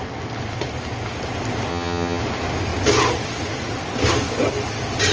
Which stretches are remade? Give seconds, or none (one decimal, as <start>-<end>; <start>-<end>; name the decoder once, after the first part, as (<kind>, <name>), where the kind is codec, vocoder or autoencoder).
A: 1.7-2.2 (vocoder, HiFi-GAN)